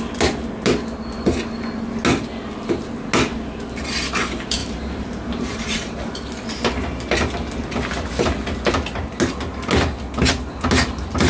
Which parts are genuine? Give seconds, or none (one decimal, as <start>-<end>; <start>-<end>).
0.0-4.6; 7.0-11.3